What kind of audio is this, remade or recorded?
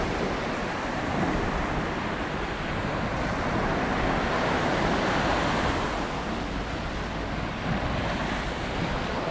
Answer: recorded